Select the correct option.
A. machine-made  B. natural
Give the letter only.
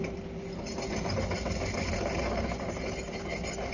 B